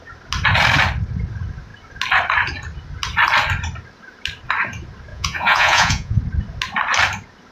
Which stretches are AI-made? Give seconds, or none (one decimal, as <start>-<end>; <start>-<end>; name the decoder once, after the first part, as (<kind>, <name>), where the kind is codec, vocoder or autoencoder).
5.1-6.2 (vocoder, Vocos)